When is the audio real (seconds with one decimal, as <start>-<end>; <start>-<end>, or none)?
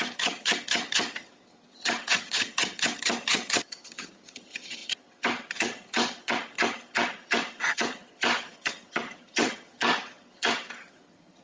none